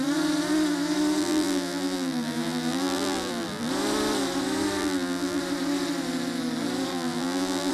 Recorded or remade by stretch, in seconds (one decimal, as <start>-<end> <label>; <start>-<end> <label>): 0.0-1.2 recorded; 1.2-3.7 remade; 3.7-4.8 recorded; 4.8-5.4 remade; 5.4-6.9 recorded; 6.9-7.7 remade